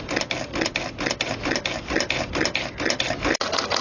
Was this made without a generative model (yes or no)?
yes